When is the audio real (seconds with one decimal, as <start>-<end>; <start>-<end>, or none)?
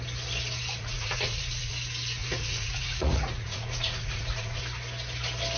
0.0-0.8; 1.7-2.2; 4.6-5.6